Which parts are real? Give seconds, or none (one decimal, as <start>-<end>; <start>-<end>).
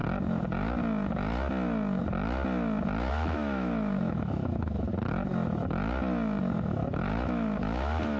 0.0-3.1; 4.9-6.6